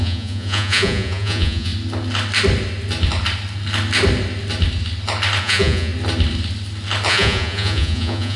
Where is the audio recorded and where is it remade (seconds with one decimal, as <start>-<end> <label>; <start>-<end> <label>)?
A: 0.0-1.7 remade; 1.7-5.4 recorded; 5.4-5.9 remade; 5.9-7.1 recorded; 7.1-8.4 remade